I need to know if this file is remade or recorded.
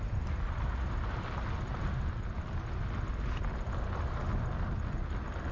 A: recorded